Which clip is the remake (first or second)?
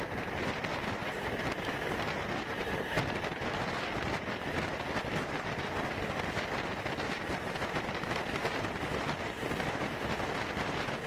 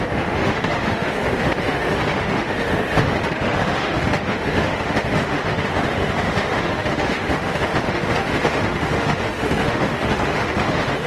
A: second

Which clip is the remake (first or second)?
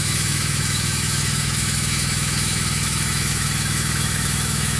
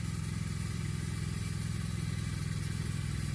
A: first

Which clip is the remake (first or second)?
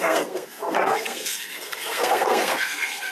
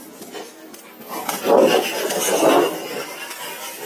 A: first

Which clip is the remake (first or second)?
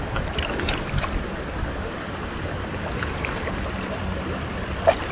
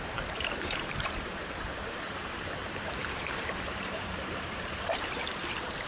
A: second